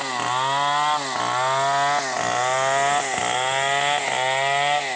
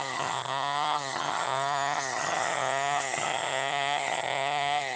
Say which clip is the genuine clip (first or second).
first